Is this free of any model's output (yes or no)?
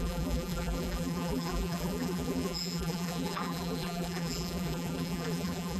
no